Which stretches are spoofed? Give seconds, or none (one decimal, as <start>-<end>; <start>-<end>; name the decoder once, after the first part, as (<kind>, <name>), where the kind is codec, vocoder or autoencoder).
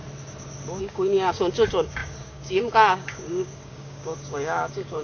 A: 0.8-5.0 (codec, DAC)